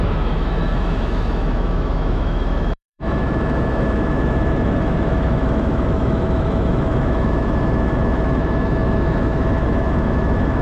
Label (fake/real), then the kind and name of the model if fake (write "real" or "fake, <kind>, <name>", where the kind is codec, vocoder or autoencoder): fake, autoencoder, DAC-VAE